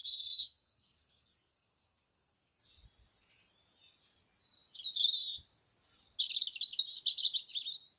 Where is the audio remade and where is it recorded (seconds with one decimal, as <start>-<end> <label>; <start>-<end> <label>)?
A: 0.0-2.6 remade; 2.6-8.0 recorded